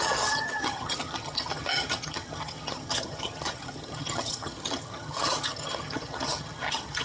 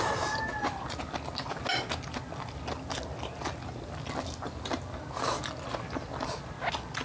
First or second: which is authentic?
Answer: second